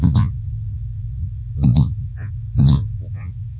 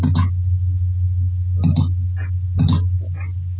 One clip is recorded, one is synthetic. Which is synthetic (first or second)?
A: first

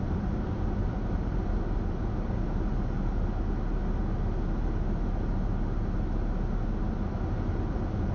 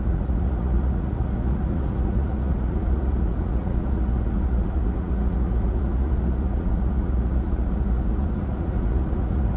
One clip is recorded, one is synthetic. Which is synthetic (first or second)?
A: second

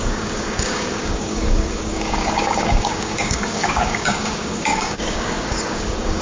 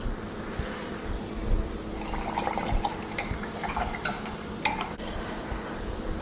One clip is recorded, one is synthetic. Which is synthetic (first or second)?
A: first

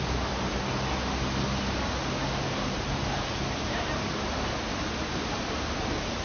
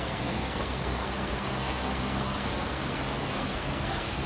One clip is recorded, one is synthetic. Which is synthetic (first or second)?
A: second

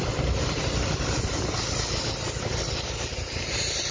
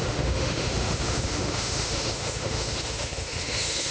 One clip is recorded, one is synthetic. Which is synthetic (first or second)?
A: second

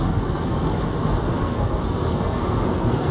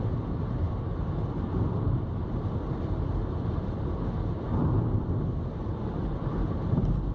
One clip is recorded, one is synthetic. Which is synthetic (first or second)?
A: first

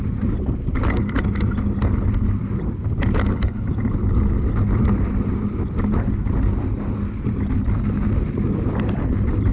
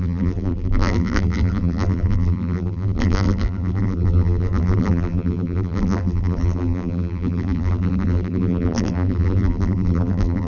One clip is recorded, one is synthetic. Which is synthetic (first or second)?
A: second